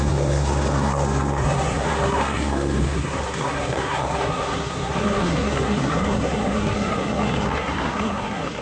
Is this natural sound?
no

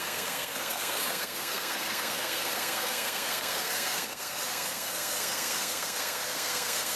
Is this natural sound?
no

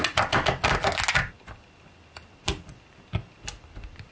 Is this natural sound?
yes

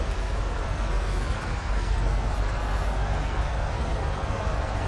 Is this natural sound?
no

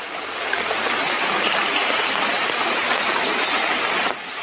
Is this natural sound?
yes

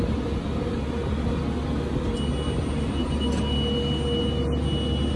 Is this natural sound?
yes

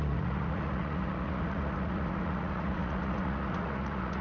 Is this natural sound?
no